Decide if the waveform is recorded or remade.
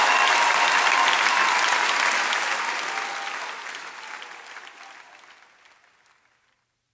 recorded